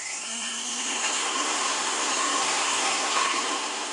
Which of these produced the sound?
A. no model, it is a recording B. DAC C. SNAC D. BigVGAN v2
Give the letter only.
C